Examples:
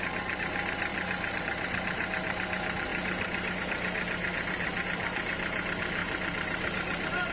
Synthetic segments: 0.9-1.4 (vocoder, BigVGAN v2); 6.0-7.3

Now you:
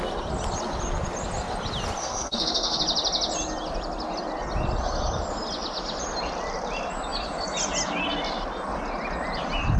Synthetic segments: 2.0-2.8 (codec, SNAC)

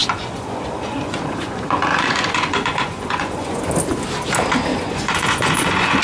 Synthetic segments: 0.0-3.6 (vocoder, Vocos); 4.7-6.0

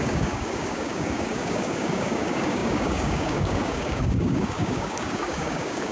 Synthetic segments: 0.0-5.9 (codec, DAC)

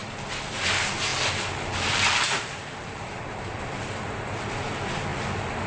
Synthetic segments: 1.1-4.5 (vocoder, BigVGAN v2); 5.1-5.7